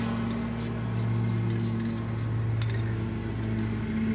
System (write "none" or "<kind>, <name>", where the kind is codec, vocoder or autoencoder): none